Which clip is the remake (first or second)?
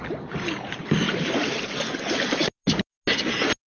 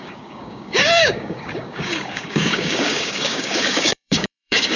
second